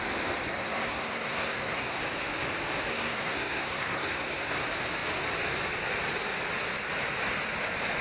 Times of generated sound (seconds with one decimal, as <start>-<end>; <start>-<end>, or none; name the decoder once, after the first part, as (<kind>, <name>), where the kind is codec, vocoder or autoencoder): 0.5-2.0 (codec, SNAC); 2.9-4.5